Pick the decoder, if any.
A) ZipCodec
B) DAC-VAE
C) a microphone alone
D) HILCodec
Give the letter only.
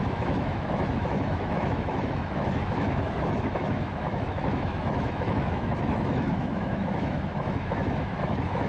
B